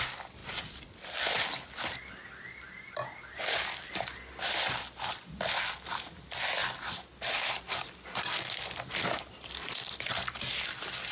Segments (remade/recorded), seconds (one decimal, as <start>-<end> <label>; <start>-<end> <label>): 0.0-11.1 recorded